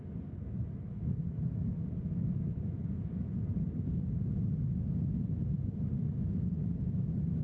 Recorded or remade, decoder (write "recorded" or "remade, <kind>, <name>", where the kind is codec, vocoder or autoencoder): remade, autoencoder, DAC-VAE